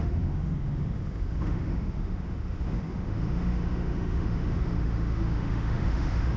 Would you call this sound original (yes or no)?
no